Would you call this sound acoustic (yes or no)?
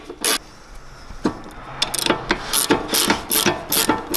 yes